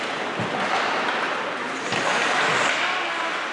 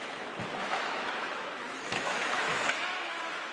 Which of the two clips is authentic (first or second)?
first